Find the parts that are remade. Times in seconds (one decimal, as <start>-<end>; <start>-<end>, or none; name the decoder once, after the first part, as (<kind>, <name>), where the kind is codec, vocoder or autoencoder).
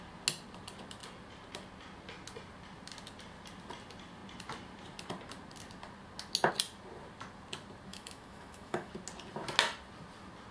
7.9-8.9 (autoencoder, DAC-VAE)